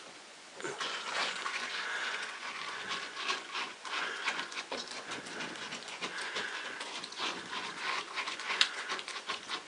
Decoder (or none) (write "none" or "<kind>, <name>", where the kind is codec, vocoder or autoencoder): vocoder, Vocos